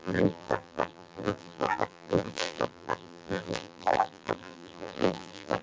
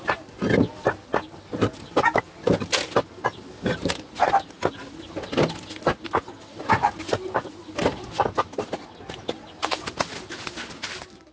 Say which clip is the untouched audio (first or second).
second